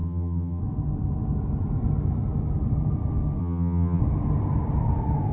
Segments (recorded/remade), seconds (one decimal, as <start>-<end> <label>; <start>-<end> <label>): 0.0-0.6 remade; 0.6-3.4 recorded; 3.4-4.0 remade; 4.0-5.3 recorded